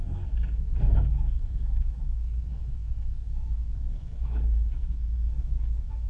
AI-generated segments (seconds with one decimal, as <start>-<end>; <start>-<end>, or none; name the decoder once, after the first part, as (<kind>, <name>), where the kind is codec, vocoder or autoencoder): 0.0-6.1 (codec, SNAC)